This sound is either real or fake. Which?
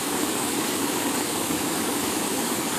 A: fake